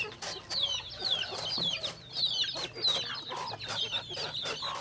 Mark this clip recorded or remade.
recorded